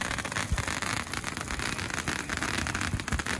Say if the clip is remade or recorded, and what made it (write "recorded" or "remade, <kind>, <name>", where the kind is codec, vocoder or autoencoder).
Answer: recorded